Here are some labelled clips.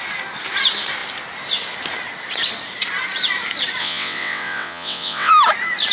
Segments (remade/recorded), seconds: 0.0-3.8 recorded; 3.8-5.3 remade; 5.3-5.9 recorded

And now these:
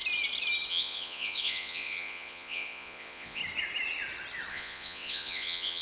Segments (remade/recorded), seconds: 0.0-0.7 recorded; 0.7-3.4 remade; 3.4-4.5 recorded; 4.5-5.8 remade

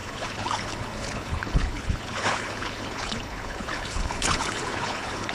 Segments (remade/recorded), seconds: 0.0-5.3 remade

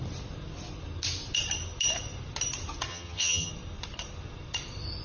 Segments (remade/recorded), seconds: 0.0-2.9 recorded; 2.9-3.5 remade; 3.5-5.0 recorded

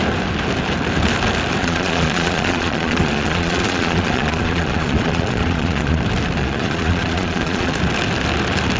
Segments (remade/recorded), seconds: 0.0-1.6 recorded; 1.6-6.0 remade; 6.0-6.4 recorded; 6.4-7.7 remade; 7.7-8.8 recorded

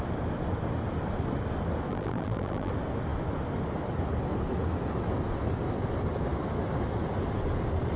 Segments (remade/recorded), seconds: 0.0-1.9 recorded; 1.9-2.7 remade; 2.7-8.0 recorded

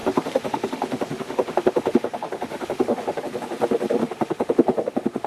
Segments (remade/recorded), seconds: 0.0-3.2 remade; 3.2-4.0 recorded; 4.0-5.3 remade